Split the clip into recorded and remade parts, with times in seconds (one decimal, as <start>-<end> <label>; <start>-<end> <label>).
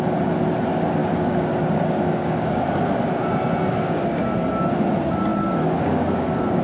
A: 0.0-1.0 recorded; 1.0-2.8 remade; 2.8-3.7 recorded; 3.7-4.2 remade; 4.2-5.3 recorded; 5.3-6.6 remade